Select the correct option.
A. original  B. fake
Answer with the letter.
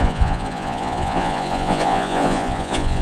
B